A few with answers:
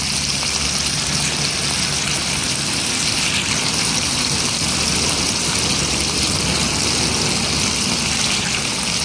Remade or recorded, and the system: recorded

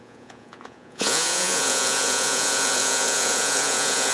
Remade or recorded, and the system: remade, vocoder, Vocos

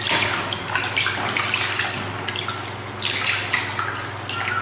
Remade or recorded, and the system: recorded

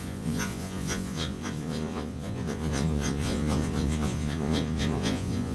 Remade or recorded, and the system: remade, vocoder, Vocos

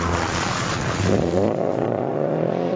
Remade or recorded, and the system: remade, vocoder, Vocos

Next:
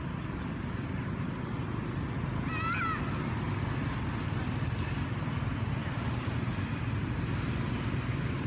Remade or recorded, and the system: recorded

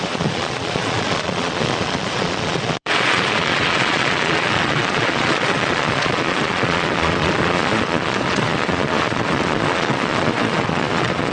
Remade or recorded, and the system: remade, vocoder, Vocos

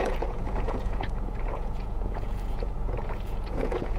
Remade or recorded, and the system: remade, vocoder, Vocos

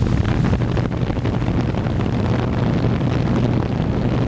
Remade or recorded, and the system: recorded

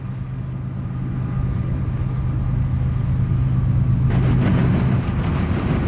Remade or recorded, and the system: recorded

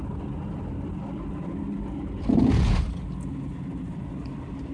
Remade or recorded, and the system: recorded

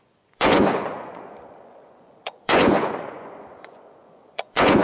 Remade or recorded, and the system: remade, vocoder, Vocos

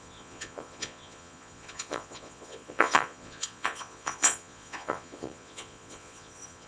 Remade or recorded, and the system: remade, vocoder, Vocos